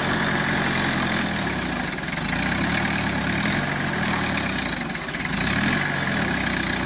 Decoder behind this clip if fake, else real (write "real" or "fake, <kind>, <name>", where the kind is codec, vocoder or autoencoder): real